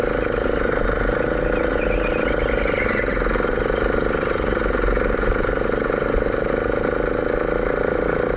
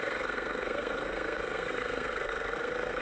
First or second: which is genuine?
first